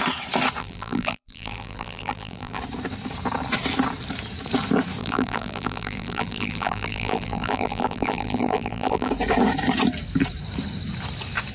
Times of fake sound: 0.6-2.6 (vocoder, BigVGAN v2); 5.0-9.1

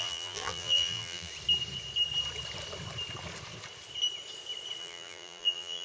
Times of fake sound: 0.0-1.3 (vocoder, BigVGAN v2); 4.8-5.8

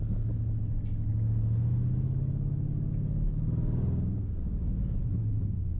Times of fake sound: none

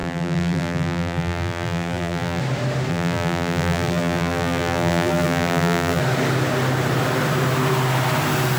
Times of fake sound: 0.0-2.4 (vocoder, BigVGAN v2); 2.9-6.0

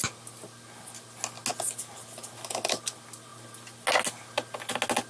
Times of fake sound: none

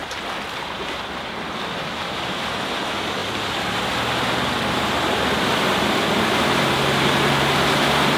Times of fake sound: none

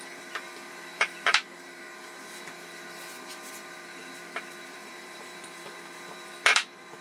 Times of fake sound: 0.0-7.0 (vocoder, BigVGAN v2)